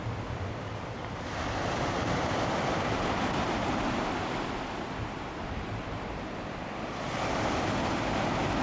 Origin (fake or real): real